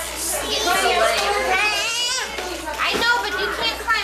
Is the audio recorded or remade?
recorded